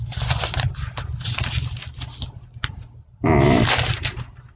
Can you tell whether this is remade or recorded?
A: recorded